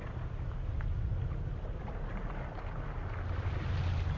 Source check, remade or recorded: recorded